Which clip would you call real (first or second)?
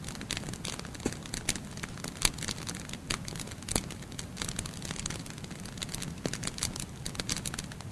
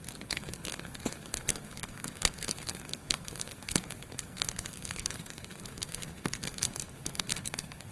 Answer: first